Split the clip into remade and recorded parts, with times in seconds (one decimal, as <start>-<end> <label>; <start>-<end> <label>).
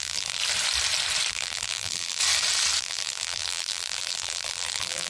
0.0-0.4 remade; 0.4-1.3 recorded; 1.3-2.2 remade; 2.2-2.8 recorded; 2.8-5.1 remade